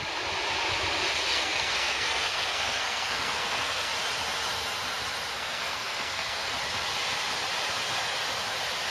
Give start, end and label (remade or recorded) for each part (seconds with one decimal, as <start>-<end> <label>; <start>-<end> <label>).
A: 0.0-1.3 recorded; 1.3-3.9 remade; 3.9-5.3 recorded; 5.3-6.5 remade; 6.5-8.9 recorded